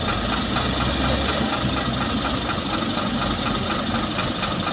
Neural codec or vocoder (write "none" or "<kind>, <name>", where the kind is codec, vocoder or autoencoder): none